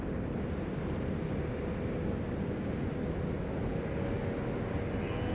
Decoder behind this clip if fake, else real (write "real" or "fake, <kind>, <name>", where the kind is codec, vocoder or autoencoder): real